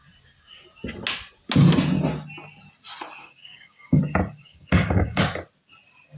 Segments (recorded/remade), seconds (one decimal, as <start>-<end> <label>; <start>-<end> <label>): 0.0-3.2 recorded; 3.2-4.0 remade; 4.0-4.4 recorded; 4.4-5.2 remade; 5.2-6.2 recorded